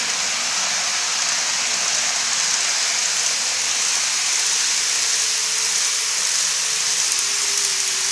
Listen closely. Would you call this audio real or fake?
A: real